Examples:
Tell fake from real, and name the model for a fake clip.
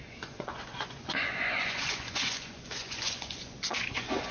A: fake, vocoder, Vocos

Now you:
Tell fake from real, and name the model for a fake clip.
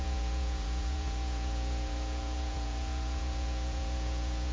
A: fake, vocoder, Vocos